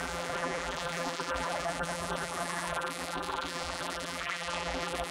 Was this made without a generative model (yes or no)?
no